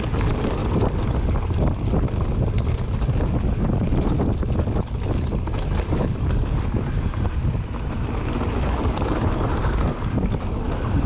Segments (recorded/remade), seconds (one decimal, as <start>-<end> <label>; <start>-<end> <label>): 0.0-0.6 remade; 0.6-3.4 recorded; 3.4-3.9 remade; 3.9-5.9 recorded; 5.9-7.4 remade; 7.4-8.6 recorded; 8.6-11.1 remade